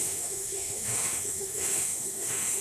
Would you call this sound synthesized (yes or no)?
yes